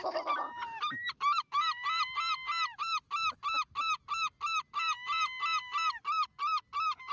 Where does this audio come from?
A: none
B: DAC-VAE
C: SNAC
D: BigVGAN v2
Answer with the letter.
A